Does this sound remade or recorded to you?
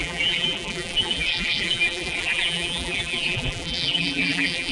remade